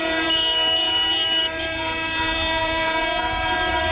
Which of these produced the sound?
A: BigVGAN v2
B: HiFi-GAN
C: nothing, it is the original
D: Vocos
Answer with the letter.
A